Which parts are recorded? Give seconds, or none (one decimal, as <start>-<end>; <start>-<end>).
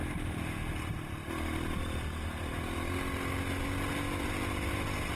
0.0-5.2